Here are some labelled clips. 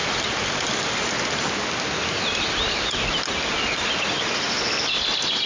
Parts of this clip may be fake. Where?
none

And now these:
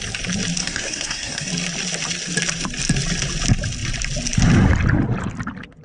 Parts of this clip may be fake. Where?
0.6-1.5 (codec, SNAC)

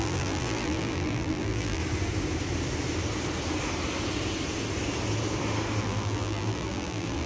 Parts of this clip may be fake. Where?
0.0-1.8 (vocoder, BigVGAN v2); 5.8-7.3

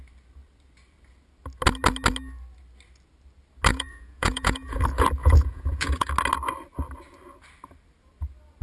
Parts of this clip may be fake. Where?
3.7-4.8 (vocoder, Vocos); 5.2-6.1

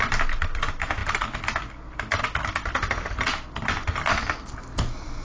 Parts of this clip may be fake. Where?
none